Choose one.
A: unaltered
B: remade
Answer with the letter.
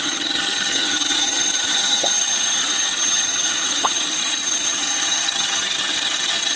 B